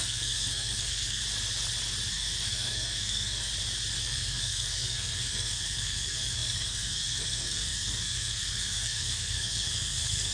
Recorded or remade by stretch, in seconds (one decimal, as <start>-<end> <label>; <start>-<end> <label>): 0.0-1.2 remade; 1.2-2.1 recorded; 2.1-3.5 remade; 3.5-4.0 recorded; 4.0-10.3 remade